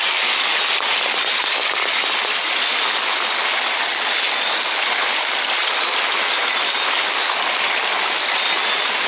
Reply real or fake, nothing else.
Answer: real